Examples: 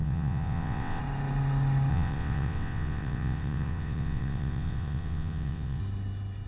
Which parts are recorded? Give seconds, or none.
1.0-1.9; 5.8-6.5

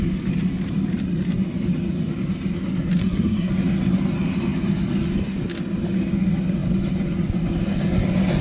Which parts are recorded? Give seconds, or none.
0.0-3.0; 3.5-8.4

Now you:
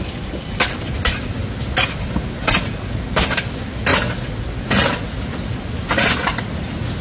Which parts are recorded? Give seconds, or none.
0.0-7.0